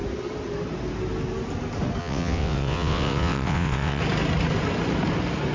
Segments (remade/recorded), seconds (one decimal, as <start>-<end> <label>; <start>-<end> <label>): 0.0-2.0 recorded; 2.0-4.0 remade; 4.0-5.5 recorded